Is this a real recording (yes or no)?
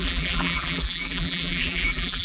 no